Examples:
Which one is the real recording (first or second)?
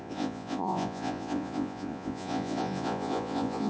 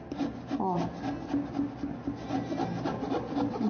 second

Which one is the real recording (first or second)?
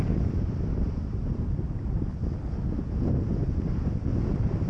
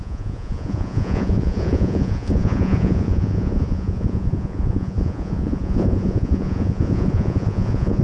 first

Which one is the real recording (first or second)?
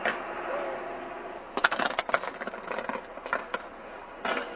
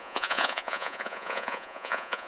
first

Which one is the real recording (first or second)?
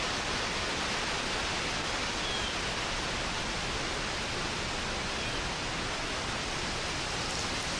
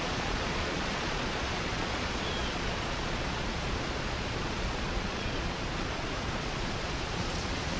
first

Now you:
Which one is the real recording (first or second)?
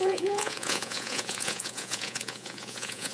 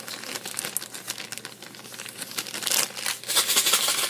second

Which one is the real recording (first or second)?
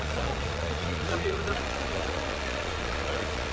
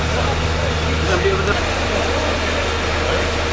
second